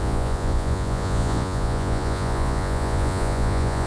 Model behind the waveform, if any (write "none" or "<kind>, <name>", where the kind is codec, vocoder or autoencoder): vocoder, Vocos